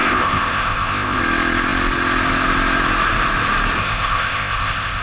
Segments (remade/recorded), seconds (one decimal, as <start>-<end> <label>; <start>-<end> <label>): 0.0-1.2 remade; 1.2-3.8 recorded; 3.8-5.0 remade